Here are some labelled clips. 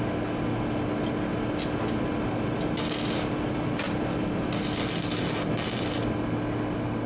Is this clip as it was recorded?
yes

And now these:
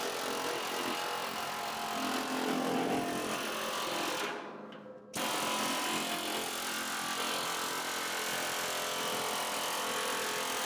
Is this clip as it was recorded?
yes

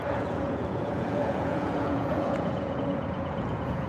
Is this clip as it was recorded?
no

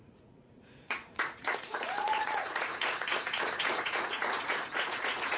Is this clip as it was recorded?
no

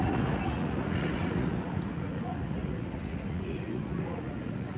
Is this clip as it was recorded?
no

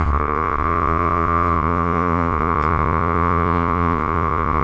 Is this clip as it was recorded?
no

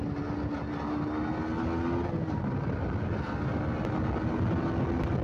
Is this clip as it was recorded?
yes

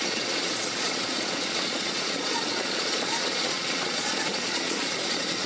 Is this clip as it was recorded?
no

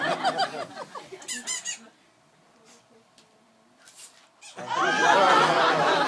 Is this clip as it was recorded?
yes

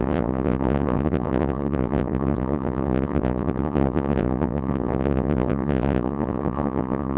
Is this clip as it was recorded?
no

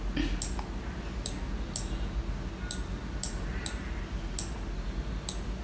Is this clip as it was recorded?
yes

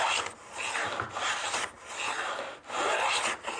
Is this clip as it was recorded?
yes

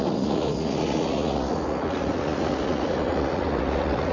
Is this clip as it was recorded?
no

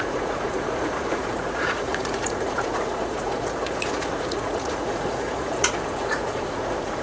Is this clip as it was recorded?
no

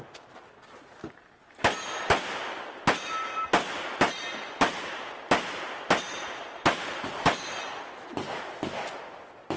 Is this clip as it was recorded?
yes